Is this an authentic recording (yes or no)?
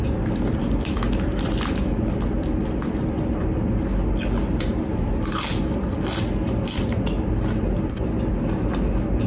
yes